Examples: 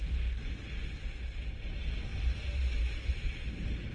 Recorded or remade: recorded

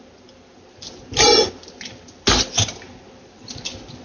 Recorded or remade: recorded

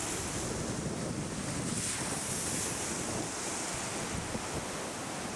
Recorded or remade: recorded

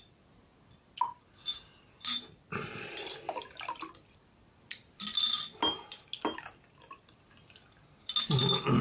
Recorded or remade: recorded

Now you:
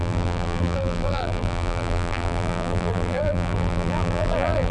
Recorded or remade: remade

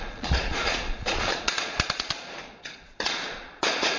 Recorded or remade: remade